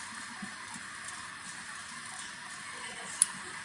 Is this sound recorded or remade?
recorded